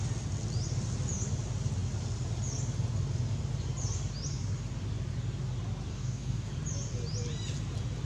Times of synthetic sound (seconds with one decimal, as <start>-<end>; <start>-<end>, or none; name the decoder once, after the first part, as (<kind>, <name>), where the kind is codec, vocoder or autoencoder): 5.9-6.5 (codec, DAC)